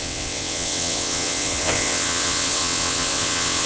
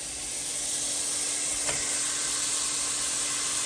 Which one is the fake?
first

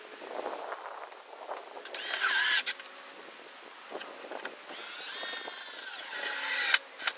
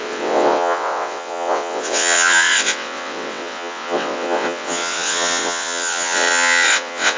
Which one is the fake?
second